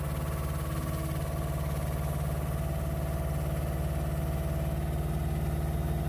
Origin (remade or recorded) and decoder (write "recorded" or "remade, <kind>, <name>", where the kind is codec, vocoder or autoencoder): recorded